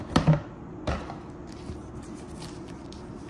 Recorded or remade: recorded